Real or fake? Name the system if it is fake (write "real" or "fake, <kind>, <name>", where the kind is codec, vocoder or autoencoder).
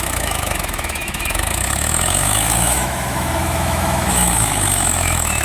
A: fake, autoencoder, DAC-VAE